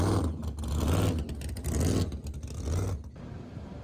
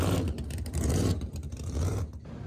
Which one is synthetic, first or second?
second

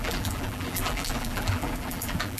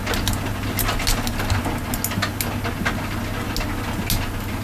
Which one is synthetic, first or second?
first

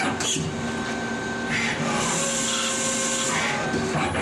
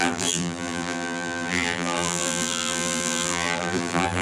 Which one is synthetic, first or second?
second